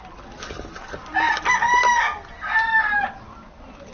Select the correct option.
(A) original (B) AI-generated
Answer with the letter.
A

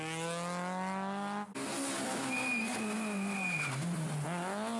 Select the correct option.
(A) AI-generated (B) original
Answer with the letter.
B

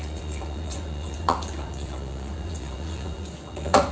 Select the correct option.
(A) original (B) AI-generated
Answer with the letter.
B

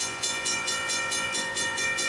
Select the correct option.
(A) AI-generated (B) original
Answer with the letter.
A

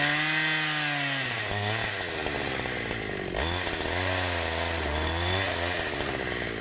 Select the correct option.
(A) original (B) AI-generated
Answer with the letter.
A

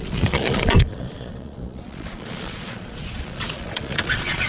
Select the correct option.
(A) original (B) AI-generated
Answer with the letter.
B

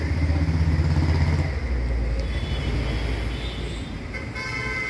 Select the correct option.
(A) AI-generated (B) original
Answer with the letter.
B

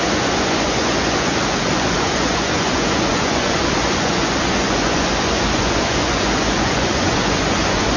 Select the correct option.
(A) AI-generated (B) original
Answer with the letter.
A